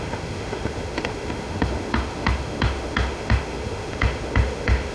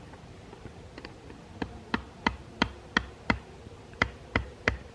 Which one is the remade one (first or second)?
first